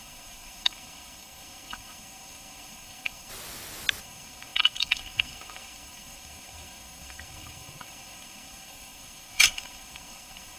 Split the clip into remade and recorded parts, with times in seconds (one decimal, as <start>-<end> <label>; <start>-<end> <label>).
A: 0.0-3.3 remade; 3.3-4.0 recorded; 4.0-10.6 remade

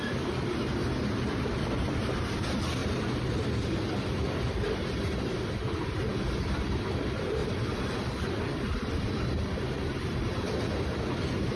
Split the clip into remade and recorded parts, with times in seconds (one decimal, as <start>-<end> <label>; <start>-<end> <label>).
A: 0.0-0.7 remade; 0.7-1.3 recorded; 1.3-11.6 remade

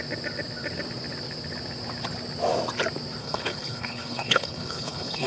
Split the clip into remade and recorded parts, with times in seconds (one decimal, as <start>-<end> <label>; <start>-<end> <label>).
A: 0.0-3.2 recorded; 3.2-5.3 remade

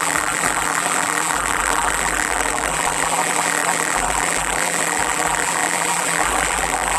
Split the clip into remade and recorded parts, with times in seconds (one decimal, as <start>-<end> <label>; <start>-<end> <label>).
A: 0.0-7.0 remade